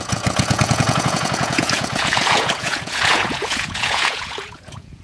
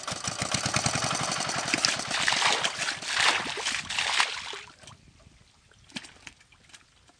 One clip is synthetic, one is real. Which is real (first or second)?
second